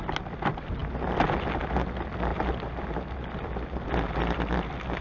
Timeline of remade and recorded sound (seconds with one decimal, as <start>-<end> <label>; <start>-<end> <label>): 0.0-5.0 recorded